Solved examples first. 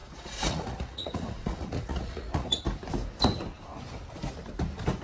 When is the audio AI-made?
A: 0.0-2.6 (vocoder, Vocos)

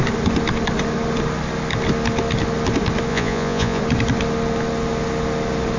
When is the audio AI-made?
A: 3.1-3.8 (vocoder, Vocos)

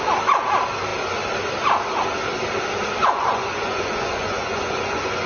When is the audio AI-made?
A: 3.0-5.3 (vocoder, Vocos)